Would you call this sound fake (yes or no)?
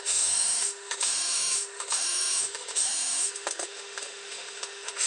yes